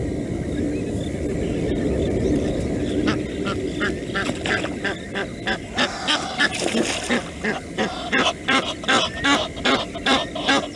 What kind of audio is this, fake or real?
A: real